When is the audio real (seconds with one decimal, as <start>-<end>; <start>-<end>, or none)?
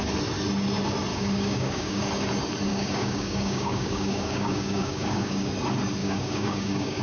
0.0-1.1; 2.0-2.7; 5.5-6.0